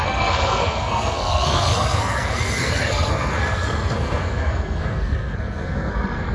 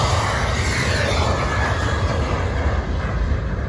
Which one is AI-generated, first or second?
first